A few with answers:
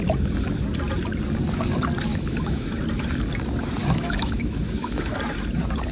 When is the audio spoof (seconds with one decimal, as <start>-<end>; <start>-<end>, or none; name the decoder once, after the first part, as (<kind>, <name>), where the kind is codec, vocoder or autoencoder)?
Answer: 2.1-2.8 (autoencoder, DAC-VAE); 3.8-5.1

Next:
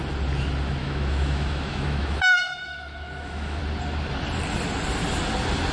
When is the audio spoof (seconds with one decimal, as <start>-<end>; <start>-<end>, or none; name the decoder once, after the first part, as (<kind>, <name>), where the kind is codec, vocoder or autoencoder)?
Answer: 0.8-3.6 (autoencoder, DAC-VAE)

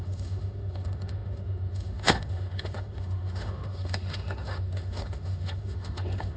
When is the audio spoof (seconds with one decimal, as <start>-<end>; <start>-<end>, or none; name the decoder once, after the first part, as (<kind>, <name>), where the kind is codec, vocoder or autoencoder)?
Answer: 0.0-6.4 (autoencoder, DAC-VAE)

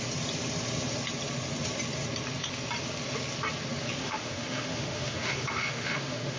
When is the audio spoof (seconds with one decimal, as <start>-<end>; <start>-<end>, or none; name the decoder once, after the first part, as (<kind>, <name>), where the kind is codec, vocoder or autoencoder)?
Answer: 4.0-6.4 (autoencoder, DAC-VAE)

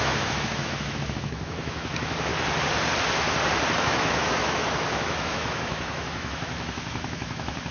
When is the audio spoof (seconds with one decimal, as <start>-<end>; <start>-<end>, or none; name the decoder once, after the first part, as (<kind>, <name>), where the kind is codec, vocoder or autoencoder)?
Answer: 0.0-2.3 (autoencoder, DAC-VAE); 3.7-7.7

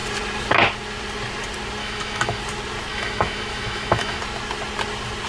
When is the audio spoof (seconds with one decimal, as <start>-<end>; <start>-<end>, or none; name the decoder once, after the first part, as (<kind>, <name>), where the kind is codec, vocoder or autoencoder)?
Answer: 1.8-2.4 (autoencoder, DAC-VAE); 2.9-4.2